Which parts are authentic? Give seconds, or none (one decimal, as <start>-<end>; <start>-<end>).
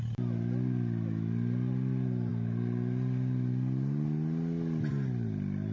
0.0-5.7